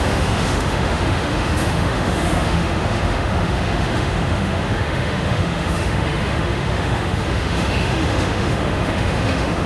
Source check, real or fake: fake